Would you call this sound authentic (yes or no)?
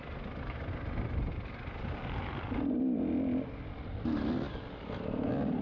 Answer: yes